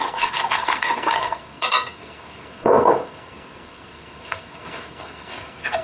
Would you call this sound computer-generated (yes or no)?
yes